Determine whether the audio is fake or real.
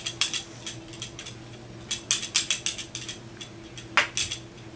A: real